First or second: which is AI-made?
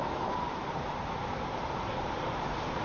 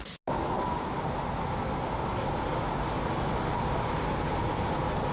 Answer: first